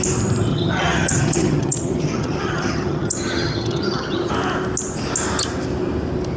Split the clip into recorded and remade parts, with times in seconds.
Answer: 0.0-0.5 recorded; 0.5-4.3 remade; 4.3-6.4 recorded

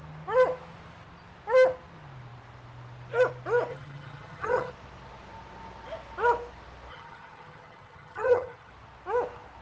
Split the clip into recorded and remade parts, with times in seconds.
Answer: 0.0-3.7 recorded; 3.7-4.7 remade; 4.7-6.9 recorded; 6.9-8.7 remade; 8.7-9.6 recorded

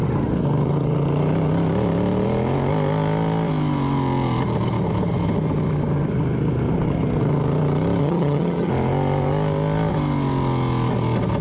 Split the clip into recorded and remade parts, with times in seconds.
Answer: 0.0-8.0 recorded; 8.0-8.7 remade; 8.7-11.4 recorded

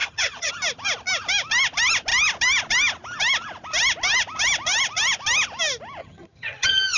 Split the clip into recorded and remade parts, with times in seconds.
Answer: 0.0-0.5 remade; 0.5-6.0 recorded; 6.0-7.0 remade